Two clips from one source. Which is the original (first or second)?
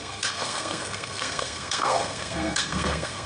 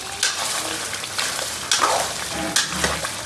second